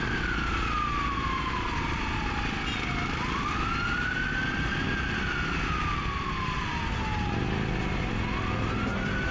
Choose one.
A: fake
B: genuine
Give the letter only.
B